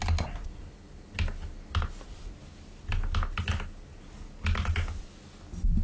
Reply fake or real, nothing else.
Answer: real